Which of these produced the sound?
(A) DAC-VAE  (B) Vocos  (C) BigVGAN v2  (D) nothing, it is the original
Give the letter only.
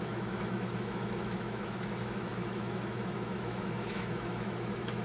A